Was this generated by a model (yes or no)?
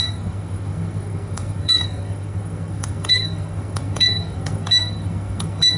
yes